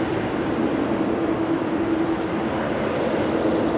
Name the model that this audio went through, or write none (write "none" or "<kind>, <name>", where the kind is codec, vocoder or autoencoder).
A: none